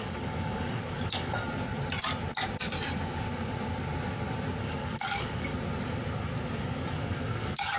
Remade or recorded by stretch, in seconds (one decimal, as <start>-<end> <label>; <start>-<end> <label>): 0.0-1.4 remade; 1.4-4.6 recorded; 4.6-5.5 remade; 5.5-6.6 recorded; 6.6-7.8 remade